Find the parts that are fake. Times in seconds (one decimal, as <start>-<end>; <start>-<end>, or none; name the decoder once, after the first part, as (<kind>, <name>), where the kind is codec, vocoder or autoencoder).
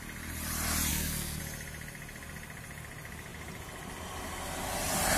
0.9-1.4 (codec, SNAC)